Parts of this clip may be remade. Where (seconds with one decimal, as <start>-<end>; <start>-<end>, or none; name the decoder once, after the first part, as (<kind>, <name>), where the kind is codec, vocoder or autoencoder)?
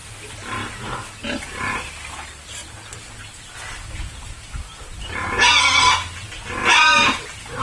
none